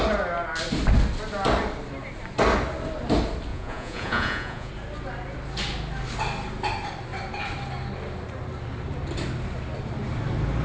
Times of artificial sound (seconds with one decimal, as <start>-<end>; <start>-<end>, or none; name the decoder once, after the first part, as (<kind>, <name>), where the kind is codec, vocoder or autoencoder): 3.5-4.7 (vocoder, Vocos)